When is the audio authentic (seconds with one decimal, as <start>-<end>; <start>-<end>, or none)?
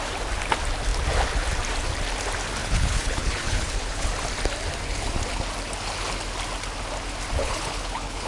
0.0-2.6; 4.1-7.4